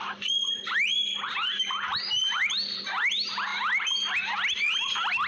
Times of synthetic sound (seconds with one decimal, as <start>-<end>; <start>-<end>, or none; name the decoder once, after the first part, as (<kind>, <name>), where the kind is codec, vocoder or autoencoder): none